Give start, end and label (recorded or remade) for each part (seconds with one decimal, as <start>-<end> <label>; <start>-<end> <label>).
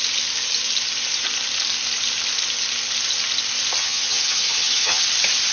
0.0-3.8 recorded; 3.8-5.0 remade; 5.0-5.5 recorded